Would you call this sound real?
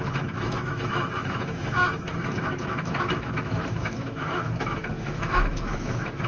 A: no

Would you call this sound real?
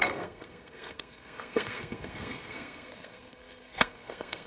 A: no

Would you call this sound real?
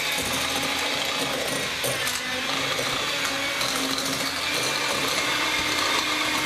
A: yes